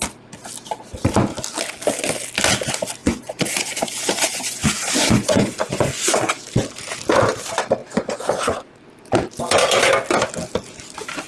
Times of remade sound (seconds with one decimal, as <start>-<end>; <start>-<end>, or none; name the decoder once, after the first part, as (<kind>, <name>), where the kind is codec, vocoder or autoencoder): 3.0-6.5 (vocoder, Vocos); 7.8-8.7